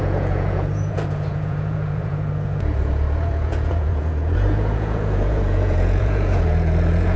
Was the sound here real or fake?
fake